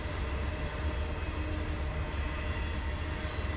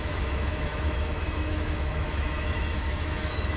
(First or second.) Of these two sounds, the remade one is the second